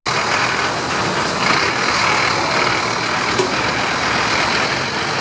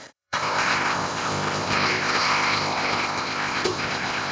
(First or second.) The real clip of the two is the first